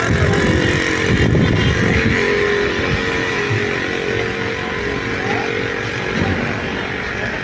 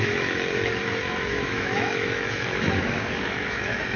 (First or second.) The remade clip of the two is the second